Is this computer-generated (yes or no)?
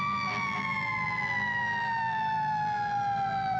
yes